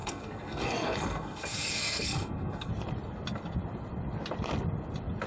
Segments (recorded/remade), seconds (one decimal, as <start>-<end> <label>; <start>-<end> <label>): 0.0-2.7 remade; 2.7-5.3 recorded